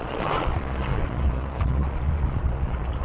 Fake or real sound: fake